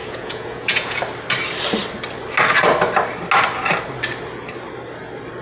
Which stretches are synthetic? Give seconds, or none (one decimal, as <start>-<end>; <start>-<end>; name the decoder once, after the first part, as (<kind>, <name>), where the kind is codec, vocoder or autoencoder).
0.0-1.0 (vocoder, Vocos)